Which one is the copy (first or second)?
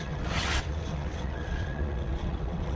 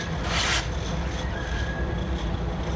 first